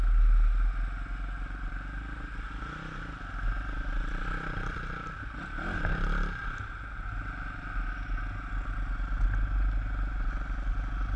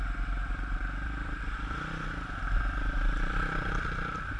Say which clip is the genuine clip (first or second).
first